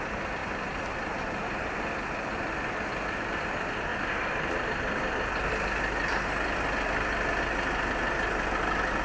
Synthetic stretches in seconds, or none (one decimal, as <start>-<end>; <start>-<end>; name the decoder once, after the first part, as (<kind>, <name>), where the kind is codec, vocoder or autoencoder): 3.9-7.4 (vocoder, BigVGAN v2)